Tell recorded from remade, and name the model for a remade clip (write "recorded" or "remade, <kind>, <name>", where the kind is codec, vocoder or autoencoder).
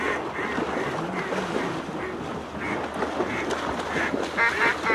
recorded